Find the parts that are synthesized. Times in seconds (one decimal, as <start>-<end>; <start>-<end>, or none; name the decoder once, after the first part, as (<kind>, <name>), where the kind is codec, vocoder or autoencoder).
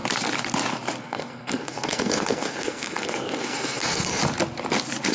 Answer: 1.0-4.2 (codec, SNAC)